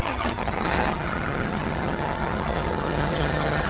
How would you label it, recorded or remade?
remade